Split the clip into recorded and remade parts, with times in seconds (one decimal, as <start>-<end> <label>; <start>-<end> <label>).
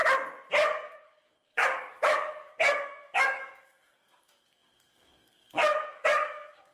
0.0-0.5 recorded; 0.5-6.7 remade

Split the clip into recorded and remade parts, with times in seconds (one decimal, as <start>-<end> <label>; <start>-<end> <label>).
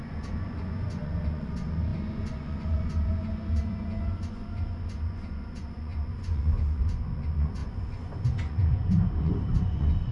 0.0-10.1 remade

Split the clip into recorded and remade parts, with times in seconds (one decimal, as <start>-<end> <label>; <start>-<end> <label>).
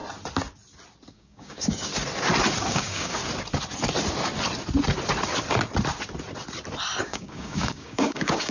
0.0-1.1 recorded; 1.1-1.9 remade; 1.9-2.7 recorded; 2.7-3.2 remade; 3.2-7.0 recorded; 7.0-8.5 remade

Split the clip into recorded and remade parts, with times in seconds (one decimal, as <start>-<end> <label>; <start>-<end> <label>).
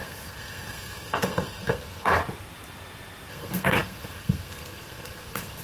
0.0-2.2 remade; 2.2-3.3 recorded; 3.3-5.6 remade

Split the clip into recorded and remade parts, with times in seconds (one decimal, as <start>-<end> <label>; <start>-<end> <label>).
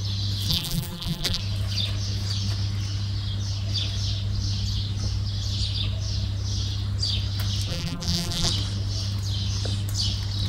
0.0-0.5 recorded; 0.5-1.4 remade; 1.4-7.7 recorded; 7.7-8.5 remade; 8.5-10.5 recorded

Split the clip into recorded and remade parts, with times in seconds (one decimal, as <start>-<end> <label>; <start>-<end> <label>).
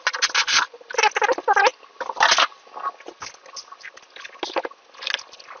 0.0-5.6 recorded